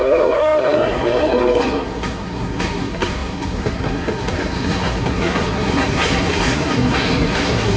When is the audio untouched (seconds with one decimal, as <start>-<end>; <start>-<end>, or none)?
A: none